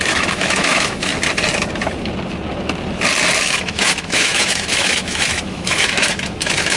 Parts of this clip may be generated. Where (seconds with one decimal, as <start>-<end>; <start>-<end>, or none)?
0.0-1.1; 3.4-6.8